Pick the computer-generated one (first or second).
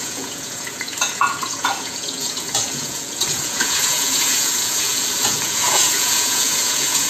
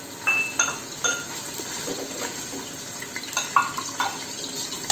first